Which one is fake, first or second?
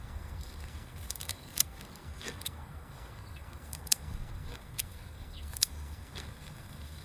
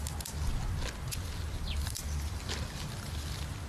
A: first